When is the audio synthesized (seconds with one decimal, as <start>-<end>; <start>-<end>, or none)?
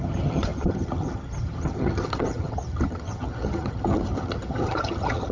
0.0-5.3